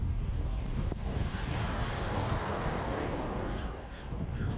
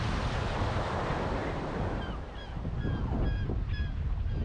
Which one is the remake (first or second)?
first